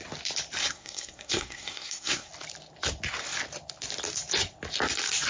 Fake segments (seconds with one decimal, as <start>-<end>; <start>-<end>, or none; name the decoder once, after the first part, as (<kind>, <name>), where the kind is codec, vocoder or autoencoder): 0.6-2.3 (codec, SNAC)